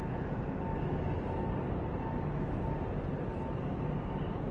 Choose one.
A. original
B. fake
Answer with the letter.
A